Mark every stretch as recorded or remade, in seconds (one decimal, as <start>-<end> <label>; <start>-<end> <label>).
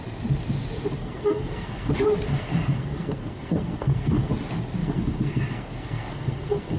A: 0.0-1.0 recorded; 1.0-1.9 remade; 1.9-2.3 recorded; 2.3-4.3 remade; 4.3-4.8 recorded; 4.8-6.8 remade